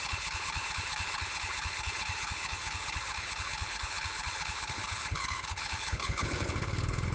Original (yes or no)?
no